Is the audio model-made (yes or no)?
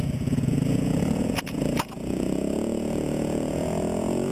yes